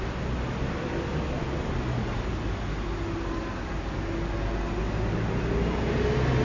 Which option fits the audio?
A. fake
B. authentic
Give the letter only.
B